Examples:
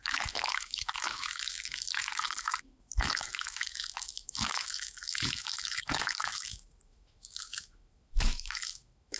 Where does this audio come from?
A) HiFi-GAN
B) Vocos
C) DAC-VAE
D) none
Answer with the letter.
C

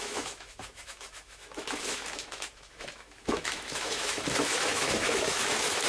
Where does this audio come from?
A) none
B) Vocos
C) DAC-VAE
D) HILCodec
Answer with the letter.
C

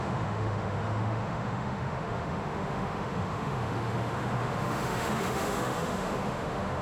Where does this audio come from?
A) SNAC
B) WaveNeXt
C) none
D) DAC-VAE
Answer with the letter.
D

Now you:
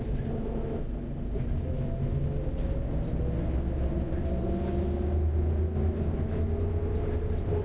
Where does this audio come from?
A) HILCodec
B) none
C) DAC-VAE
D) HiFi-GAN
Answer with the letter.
B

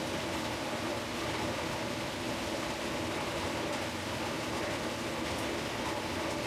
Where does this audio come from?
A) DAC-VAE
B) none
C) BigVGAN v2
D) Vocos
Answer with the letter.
B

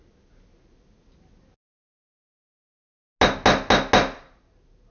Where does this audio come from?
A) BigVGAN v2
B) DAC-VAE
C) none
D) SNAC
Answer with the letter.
C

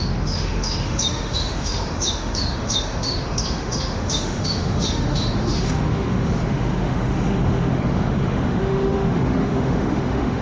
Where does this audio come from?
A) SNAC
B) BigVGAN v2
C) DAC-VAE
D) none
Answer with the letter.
C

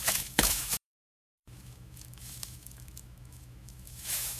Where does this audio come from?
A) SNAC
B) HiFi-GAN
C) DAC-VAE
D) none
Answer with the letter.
C